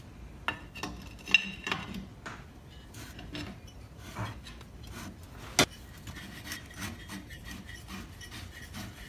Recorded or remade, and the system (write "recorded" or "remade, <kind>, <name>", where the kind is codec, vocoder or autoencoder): recorded